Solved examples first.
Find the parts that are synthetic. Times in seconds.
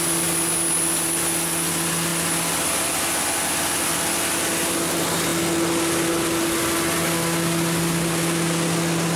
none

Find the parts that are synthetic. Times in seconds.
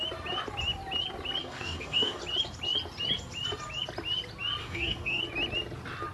1.4-2.2 (codec, DAC); 4.6-5.2